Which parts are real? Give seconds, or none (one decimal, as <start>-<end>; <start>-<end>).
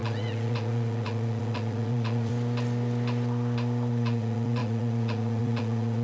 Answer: 2.3-3.9